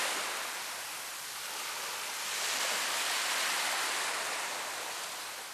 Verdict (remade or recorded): recorded